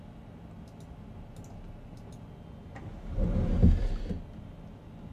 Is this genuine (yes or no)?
yes